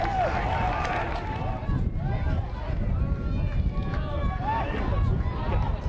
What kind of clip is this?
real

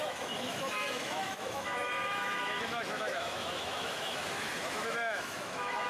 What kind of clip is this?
fake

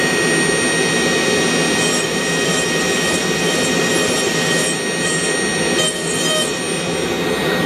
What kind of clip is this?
real